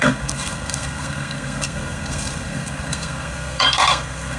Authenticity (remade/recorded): remade